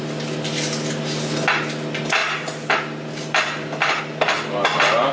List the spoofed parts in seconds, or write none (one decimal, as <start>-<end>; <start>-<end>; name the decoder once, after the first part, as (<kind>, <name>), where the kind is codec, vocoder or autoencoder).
none